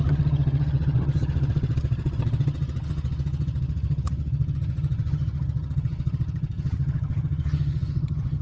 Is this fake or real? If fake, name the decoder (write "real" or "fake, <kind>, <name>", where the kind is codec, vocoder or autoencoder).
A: fake, vocoder, HiFi-GAN